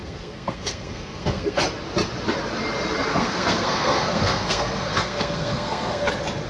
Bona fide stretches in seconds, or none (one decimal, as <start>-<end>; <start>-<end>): 1.6-3.1; 6.1-6.5